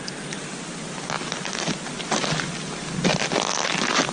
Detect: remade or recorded recorded